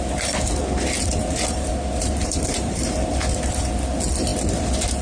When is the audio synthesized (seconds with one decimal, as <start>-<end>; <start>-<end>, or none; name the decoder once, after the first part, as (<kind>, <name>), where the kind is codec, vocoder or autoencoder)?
1.2-3.2 (vocoder, BigVGAN v2)